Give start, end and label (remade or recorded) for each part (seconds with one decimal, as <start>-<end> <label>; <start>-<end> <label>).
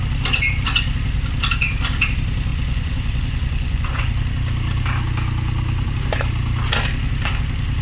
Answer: 0.0-2.5 recorded; 2.5-4.1 remade; 4.1-7.8 recorded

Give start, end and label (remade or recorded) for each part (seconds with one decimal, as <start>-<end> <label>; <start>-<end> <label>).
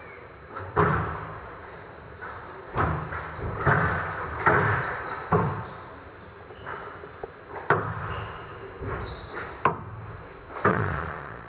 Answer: 0.0-10.7 recorded; 10.7-11.5 remade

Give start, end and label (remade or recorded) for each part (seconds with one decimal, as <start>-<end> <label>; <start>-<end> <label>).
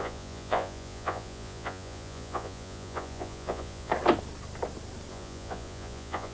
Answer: 0.0-3.9 remade; 3.9-5.1 recorded; 5.1-6.3 remade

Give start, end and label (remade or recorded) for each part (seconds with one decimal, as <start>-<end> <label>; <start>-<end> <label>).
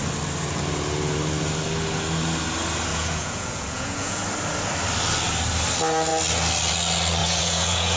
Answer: 0.0-2.9 recorded; 2.9-4.2 remade; 4.2-7.2 recorded; 7.2-8.0 remade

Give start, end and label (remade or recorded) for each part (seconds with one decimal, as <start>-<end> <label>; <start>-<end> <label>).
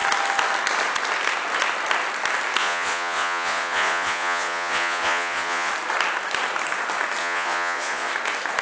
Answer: 0.0-2.6 recorded; 2.6-5.7 remade; 5.7-7.2 recorded; 7.2-8.1 remade; 8.1-8.6 recorded